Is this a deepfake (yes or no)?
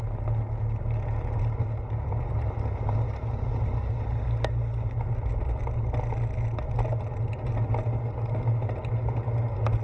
no